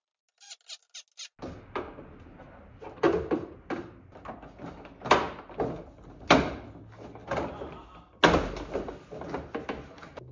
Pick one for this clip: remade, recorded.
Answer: recorded